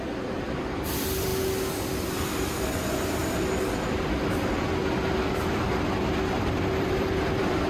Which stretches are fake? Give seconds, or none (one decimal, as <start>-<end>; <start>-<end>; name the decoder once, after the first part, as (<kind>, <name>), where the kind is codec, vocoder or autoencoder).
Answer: 0.0-1.3 (vocoder, BigVGAN v2); 2.1-3.2; 5.4-7.7